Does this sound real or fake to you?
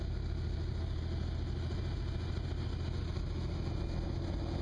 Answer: real